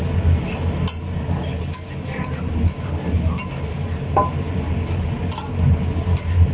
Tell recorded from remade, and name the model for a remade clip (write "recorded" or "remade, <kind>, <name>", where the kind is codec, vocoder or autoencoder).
recorded